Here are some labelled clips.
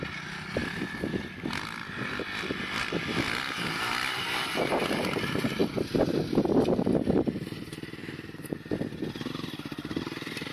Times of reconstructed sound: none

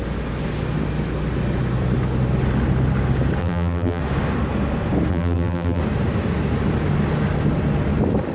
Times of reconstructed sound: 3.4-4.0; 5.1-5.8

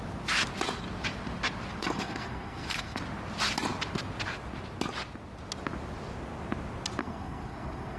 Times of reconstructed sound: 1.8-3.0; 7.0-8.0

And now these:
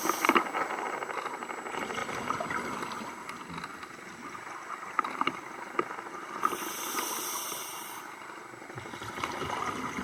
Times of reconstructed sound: none

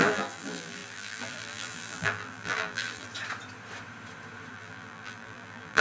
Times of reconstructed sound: 0.0-3.1; 4.5-5.8

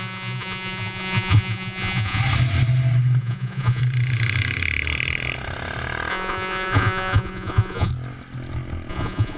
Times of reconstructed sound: 0.0-2.2; 3.2-3.8; 6.1-7.9; 8.9-9.4

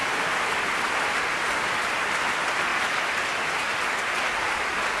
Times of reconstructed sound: 0.0-1.9

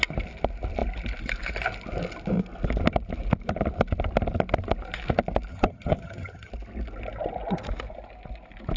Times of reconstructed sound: 5.5-6.5